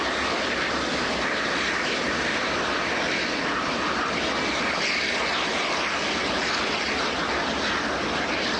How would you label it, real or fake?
real